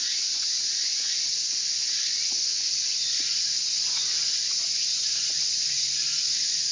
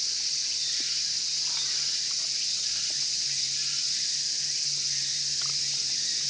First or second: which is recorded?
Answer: second